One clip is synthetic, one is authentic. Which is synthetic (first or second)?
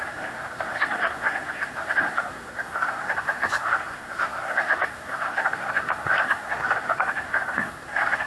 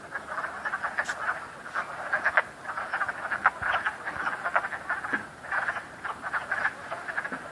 first